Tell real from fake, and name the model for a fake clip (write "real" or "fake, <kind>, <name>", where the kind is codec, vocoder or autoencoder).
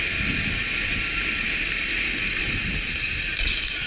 real